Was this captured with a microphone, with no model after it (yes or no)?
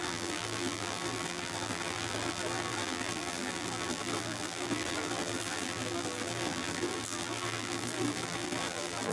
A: no